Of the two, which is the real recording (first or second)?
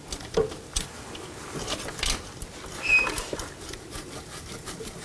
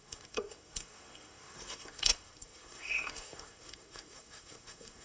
first